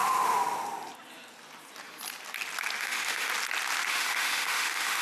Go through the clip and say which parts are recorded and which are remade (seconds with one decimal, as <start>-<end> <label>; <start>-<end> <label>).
0.0-2.8 recorded; 2.8-3.3 remade; 3.3-3.9 recorded; 3.9-5.0 remade